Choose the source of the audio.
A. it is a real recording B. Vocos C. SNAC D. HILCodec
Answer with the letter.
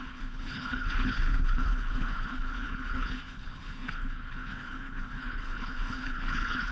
D